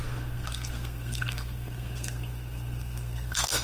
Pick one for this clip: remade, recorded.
remade